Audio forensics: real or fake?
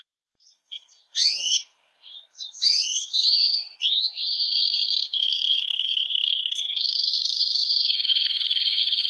fake